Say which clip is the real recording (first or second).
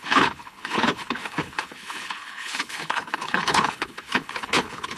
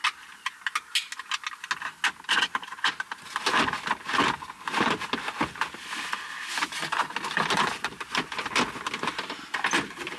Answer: second